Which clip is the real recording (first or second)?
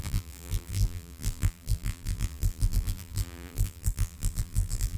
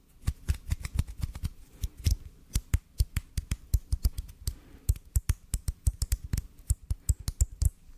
second